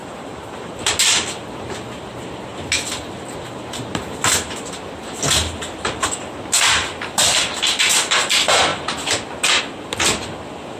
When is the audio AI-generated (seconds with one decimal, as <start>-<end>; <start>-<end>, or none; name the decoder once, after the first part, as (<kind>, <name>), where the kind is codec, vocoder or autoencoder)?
0.0-0.7 (vocoder, BigVGAN v2)